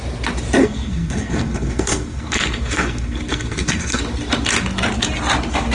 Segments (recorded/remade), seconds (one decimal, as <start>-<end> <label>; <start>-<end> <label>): 0.0-0.6 recorded; 0.6-4.0 remade; 4.0-5.7 recorded